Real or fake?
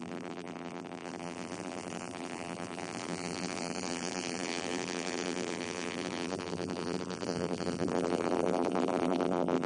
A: fake